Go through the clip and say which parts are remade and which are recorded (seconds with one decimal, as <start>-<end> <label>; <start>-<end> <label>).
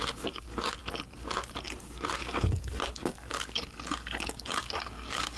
0.0-0.8 remade; 0.8-1.8 recorded; 1.8-5.4 remade